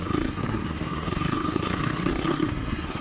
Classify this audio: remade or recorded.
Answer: remade